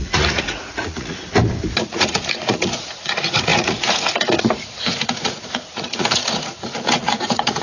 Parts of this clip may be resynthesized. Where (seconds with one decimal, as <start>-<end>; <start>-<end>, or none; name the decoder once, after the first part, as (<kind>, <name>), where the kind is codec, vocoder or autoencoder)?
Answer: 0.0-1.2 (vocoder, Vocos); 1.8-7.6